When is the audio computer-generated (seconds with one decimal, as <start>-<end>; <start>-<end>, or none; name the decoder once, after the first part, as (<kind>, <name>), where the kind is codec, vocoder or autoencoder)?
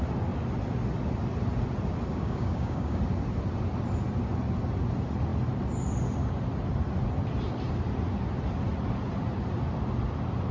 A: 2.1-3.0 (codec, DAC)